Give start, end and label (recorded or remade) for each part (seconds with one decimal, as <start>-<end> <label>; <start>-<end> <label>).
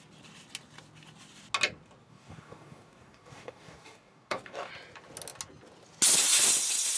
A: 0.0-2.0 recorded; 2.0-4.7 remade; 4.7-7.0 recorded